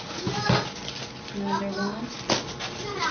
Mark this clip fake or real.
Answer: real